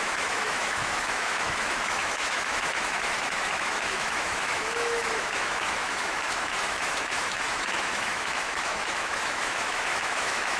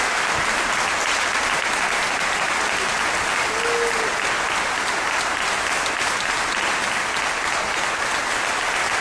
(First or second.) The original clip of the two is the second